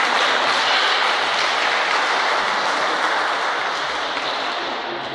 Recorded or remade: recorded